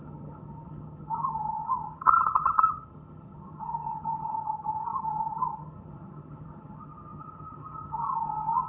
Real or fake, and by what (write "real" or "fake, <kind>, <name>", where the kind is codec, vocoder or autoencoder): fake, vocoder, HiFi-GAN